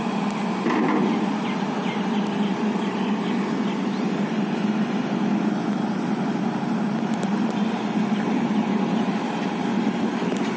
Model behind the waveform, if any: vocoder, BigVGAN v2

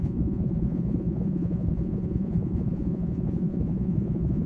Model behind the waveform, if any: vocoder, Vocos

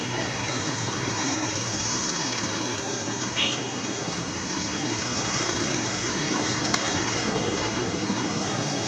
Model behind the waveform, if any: codec, SNAC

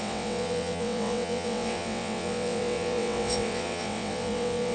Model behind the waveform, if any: vocoder, WaveNeXt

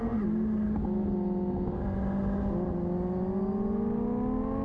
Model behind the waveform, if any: none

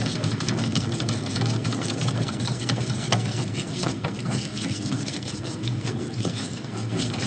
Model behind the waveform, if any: codec, SNAC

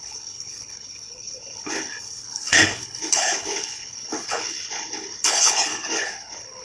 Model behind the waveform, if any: codec, HILCodec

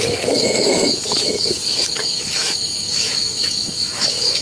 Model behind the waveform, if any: autoencoder, DAC-VAE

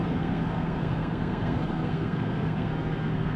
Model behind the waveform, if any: codec, SNAC